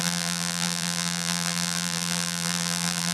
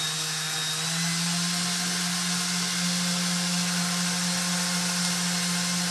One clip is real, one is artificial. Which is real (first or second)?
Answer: second